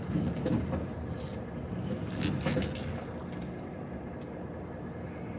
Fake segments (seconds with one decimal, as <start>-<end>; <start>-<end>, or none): none